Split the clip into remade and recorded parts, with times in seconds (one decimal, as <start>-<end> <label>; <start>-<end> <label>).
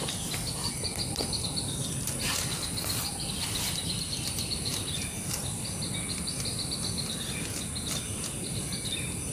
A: 0.0-4.7 remade; 4.7-9.3 recorded